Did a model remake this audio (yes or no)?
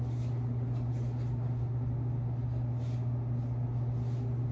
no